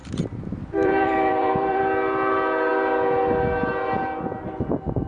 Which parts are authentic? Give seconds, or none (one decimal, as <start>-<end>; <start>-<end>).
1.8-5.1